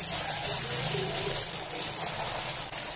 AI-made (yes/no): no